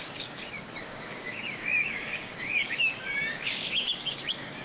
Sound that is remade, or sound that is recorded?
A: remade